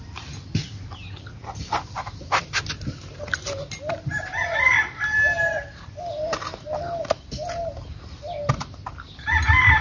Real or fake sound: real